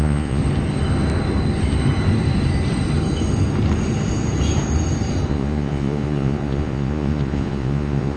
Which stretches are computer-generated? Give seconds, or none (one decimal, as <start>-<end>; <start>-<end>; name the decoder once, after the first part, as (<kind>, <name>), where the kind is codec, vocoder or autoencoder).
0.0-0.4 (vocoder, Vocos); 5.3-8.2

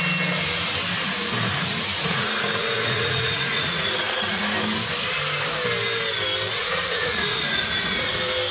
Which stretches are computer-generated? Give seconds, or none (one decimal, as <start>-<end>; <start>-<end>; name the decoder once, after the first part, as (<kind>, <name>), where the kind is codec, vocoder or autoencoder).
1.5-4.4 (vocoder, Vocos); 6.6-8.1

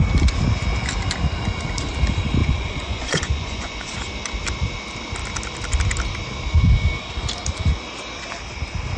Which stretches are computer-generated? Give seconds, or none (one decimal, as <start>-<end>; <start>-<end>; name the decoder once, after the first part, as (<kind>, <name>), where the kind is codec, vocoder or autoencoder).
2.4-3.9 (vocoder, Vocos)

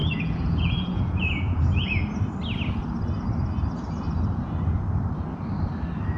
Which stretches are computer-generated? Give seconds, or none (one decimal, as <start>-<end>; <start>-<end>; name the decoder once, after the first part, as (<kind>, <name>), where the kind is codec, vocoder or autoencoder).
0.0-2.0 (vocoder, Vocos)

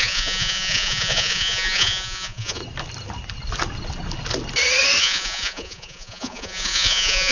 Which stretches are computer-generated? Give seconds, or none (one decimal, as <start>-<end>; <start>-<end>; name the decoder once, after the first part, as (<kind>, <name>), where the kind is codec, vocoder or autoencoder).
0.0-2.6 (vocoder, Vocos); 5.0-7.3

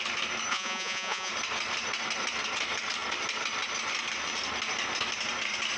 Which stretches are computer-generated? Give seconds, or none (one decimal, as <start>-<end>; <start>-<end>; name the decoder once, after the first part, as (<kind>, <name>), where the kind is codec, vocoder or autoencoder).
0.5-1.3 (vocoder, Vocos)

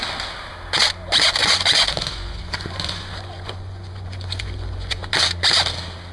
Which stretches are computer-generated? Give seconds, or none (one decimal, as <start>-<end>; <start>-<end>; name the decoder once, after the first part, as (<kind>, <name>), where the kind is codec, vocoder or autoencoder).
1.4-5.1 (vocoder, Vocos)

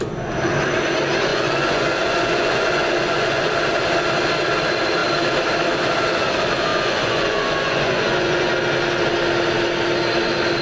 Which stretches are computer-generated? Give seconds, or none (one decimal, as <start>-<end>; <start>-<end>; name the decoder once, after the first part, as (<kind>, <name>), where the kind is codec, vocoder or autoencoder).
1.3-3.5 (vocoder, Vocos); 6.7-8.5